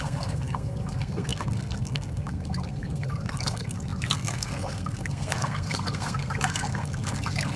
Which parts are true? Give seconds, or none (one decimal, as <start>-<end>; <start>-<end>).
none